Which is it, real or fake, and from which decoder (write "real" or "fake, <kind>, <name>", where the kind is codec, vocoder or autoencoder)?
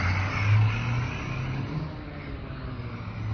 real